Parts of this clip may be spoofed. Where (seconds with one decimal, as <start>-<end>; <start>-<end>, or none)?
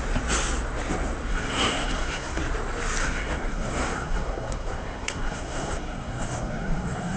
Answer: 1.3-2.4; 3.0-7.2